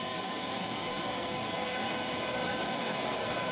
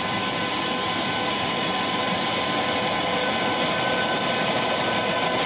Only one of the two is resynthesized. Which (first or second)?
first